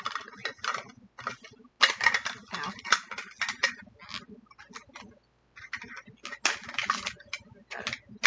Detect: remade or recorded recorded